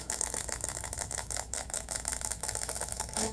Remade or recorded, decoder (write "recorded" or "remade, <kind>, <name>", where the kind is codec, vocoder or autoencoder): remade, autoencoder, DAC-VAE